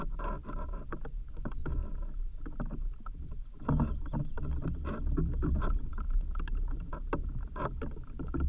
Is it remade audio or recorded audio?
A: recorded